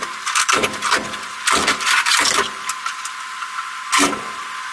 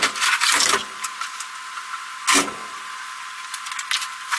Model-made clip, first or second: first